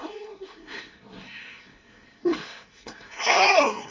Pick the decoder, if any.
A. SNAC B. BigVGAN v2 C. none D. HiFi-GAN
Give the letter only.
A